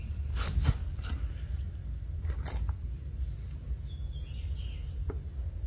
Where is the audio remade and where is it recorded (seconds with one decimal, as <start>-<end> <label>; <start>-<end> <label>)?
0.0-5.7 recorded